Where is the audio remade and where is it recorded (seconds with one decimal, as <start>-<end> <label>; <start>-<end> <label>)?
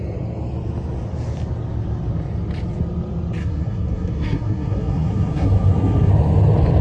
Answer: 0.0-3.4 recorded; 3.4-6.1 remade; 6.1-6.8 recorded